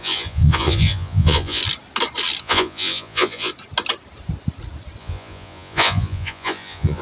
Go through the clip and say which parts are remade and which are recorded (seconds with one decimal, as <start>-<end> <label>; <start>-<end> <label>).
0.0-1.6 remade; 1.6-2.4 recorded; 2.4-3.5 remade; 3.5-5.0 recorded; 5.0-7.0 remade